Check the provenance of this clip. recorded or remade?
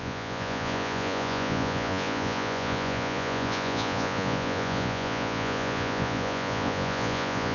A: remade